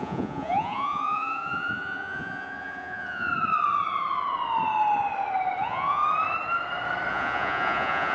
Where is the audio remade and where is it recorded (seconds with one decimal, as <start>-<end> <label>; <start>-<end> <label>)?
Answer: 0.0-3.3 remade; 3.3-5.6 recorded; 5.6-6.0 remade; 6.0-7.1 recorded; 7.1-8.1 remade